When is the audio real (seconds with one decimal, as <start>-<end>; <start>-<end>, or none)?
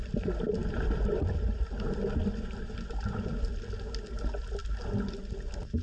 0.0-0.6; 1.6-2.2; 3.3-5.8